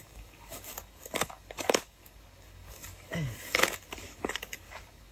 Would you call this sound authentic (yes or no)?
no